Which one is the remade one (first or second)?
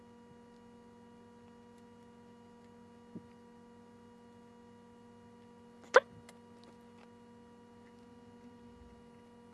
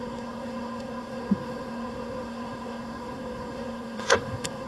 second